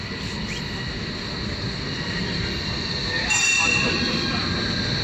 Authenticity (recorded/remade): recorded